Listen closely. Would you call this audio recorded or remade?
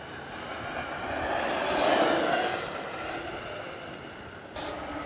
recorded